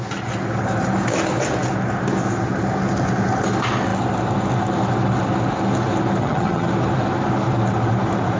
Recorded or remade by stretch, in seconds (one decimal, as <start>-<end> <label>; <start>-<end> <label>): 0.0-6.2 recorded; 6.2-6.7 remade; 6.7-8.4 recorded

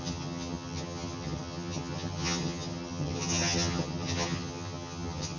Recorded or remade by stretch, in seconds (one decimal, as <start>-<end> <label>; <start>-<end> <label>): 0.0-5.4 remade